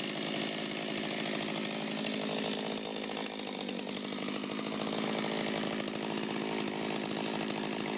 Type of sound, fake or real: real